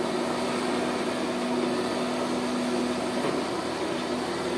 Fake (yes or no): no